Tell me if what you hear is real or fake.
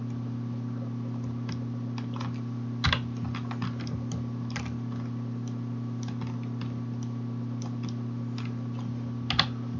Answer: real